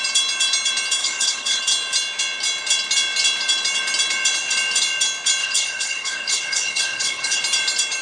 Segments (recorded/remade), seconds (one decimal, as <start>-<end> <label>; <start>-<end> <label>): 0.0-1.0 recorded; 1.0-1.6 remade; 1.6-5.4 recorded; 5.4-7.4 remade; 7.4-8.0 recorded